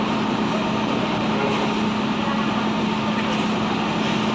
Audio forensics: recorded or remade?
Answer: recorded